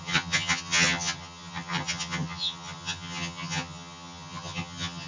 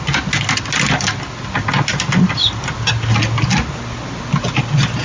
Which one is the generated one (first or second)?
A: first